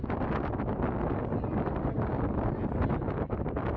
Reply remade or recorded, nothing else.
recorded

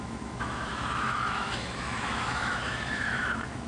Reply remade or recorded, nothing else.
remade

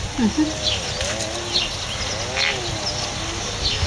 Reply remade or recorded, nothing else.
recorded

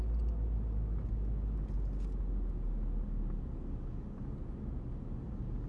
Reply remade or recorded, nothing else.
recorded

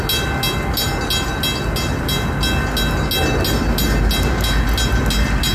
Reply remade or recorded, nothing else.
recorded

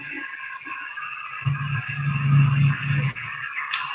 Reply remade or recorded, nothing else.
recorded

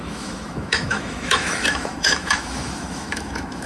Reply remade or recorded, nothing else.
remade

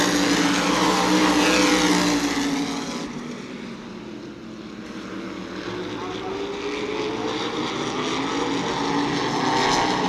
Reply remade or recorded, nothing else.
recorded